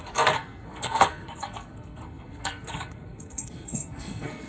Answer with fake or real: fake